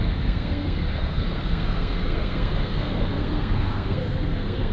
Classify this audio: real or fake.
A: fake